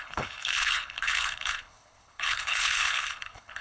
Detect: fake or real fake